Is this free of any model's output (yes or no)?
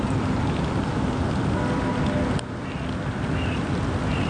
yes